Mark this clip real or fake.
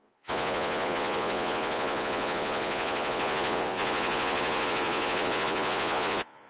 fake